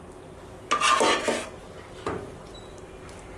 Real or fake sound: real